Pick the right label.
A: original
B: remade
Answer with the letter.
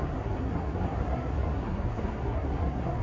B